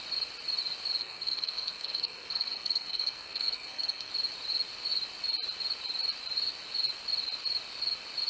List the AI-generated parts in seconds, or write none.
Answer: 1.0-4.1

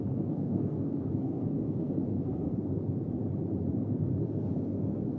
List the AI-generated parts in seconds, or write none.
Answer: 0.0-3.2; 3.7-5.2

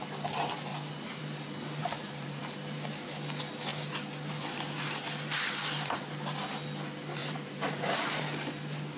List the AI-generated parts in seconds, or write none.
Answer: 1.8-2.4; 7.2-8.2

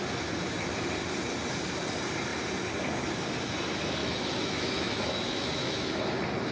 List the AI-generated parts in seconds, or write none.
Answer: 4.0-6.0